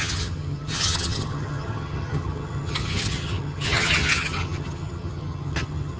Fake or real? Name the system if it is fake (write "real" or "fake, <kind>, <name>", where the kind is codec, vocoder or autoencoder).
fake, vocoder, HiFi-GAN